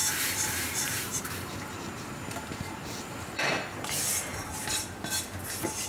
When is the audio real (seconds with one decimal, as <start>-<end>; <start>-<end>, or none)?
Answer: 3.5-5.9